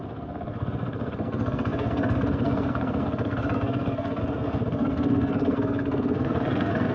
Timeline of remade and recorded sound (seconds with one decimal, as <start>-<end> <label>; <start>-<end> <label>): 0.0-6.9 remade